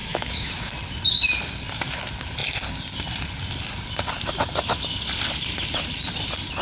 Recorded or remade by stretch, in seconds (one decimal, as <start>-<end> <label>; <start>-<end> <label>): 0.0-0.7 remade; 0.7-6.6 recorded